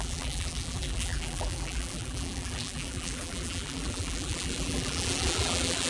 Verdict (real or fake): fake